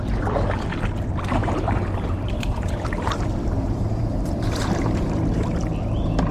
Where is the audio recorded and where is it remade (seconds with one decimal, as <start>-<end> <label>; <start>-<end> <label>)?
0.0-1.4 recorded; 1.4-5.2 remade; 5.2-6.3 recorded